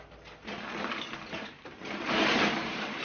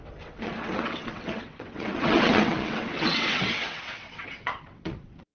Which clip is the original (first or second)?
first